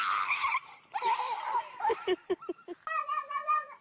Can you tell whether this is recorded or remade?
recorded